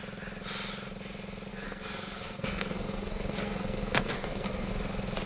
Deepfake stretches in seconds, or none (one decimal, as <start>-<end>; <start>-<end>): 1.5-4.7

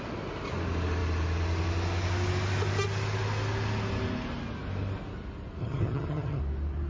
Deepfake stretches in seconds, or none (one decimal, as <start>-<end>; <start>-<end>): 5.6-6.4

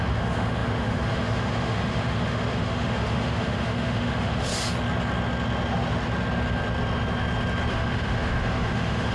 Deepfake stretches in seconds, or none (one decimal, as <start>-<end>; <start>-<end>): 0.0-4.5; 7.7-9.1

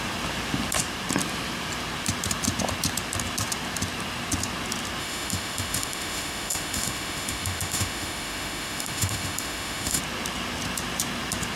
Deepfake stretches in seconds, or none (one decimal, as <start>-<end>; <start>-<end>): 5.0-10.0